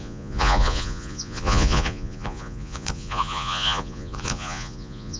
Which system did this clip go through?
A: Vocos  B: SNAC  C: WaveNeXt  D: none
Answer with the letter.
A